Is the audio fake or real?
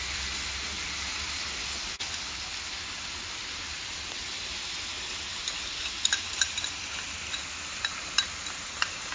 real